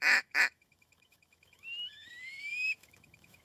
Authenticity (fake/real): fake